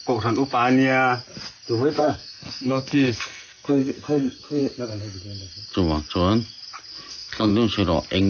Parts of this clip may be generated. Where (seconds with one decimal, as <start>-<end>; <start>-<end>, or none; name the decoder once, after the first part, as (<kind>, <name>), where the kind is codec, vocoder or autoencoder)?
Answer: 2.0-4.6 (codec, SNAC); 6.9-7.5